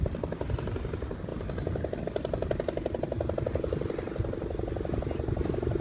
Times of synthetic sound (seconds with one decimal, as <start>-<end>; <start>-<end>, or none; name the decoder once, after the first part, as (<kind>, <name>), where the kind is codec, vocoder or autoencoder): none